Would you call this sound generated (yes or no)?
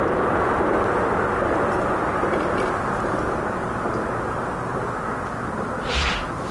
no